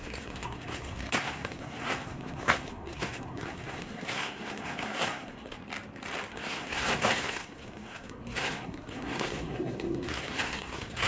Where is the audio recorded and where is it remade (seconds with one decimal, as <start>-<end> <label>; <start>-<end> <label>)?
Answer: 0.0-5.6 remade; 5.6-6.3 recorded; 6.3-11.1 remade